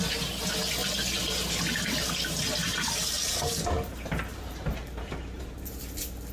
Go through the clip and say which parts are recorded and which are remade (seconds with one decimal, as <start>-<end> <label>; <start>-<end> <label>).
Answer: 0.0-4.3 recorded; 4.3-5.8 remade; 5.8-6.3 recorded